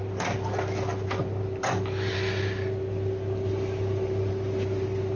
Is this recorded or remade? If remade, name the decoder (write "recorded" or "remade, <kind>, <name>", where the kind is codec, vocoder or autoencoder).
recorded